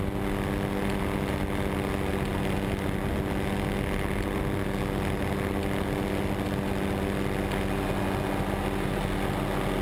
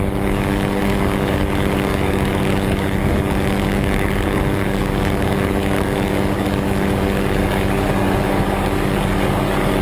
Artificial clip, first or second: second